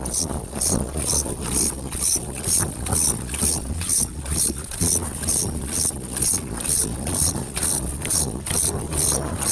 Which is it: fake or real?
fake